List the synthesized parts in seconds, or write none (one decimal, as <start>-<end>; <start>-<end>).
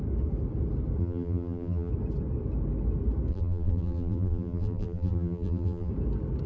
1.0-1.9; 3.3-5.9